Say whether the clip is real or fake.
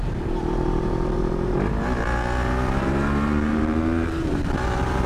fake